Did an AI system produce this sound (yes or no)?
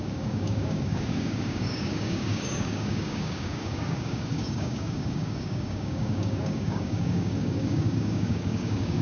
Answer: yes